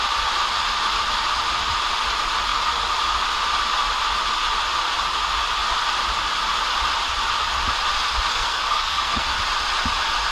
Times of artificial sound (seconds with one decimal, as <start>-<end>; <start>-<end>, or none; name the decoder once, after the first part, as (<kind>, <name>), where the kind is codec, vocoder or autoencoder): 8.3-9.4 (codec, SNAC)